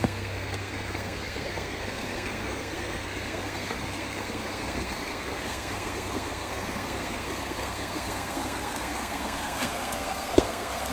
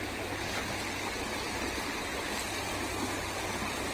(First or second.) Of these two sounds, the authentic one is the second